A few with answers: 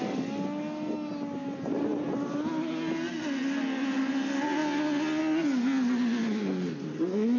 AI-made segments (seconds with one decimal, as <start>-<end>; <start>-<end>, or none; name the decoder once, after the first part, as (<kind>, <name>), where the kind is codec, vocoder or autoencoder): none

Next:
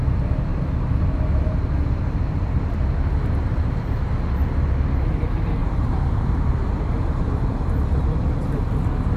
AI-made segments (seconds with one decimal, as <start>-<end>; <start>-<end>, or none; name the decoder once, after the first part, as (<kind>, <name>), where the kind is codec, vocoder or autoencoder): 0.5-4.2 (vocoder, BigVGAN v2); 5.6-7.7

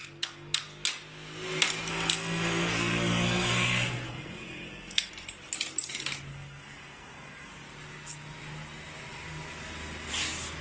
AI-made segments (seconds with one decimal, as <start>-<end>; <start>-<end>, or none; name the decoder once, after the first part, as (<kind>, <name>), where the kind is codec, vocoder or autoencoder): 0.0-0.6 (codec, SNAC); 1.9-5.1; 6.3-7.5

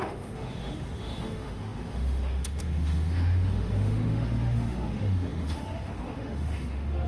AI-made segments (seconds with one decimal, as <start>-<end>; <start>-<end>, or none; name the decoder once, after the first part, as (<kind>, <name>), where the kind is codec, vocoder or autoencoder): 0.0-7.1 (autoencoder, DAC-VAE)

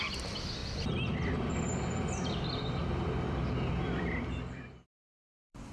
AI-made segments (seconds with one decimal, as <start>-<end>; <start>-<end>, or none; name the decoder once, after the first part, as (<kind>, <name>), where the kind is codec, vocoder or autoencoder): 0.0-0.6 (vocoder, BigVGAN v2); 4.0-5.7

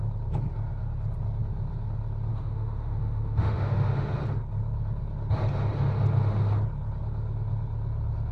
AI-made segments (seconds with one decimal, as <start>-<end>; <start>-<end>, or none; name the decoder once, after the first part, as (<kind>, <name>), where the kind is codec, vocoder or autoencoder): 2.3-4.1 (autoencoder, DAC-VAE)